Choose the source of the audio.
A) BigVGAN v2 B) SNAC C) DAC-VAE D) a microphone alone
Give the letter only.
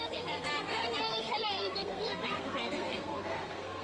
B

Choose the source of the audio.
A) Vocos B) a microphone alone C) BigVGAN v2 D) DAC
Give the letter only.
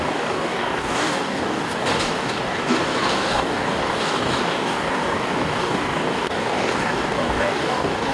D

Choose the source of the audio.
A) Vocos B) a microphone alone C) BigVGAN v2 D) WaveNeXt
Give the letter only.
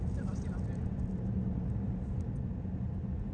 B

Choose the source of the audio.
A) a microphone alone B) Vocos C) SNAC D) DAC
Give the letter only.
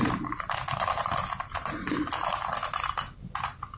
A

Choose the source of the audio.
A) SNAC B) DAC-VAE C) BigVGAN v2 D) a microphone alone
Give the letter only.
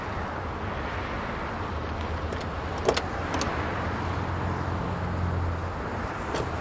D